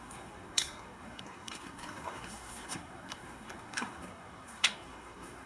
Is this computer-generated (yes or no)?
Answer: yes